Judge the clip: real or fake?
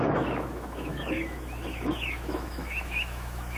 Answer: fake